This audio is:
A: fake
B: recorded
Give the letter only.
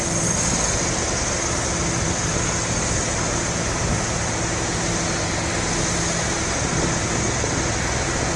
B